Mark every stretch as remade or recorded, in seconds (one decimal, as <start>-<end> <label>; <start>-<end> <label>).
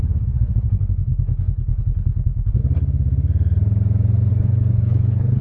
0.0-2.6 remade; 2.6-4.3 recorded; 4.3-5.4 remade